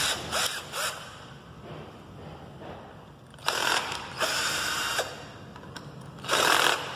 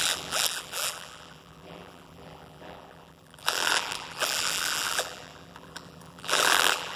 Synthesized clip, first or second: second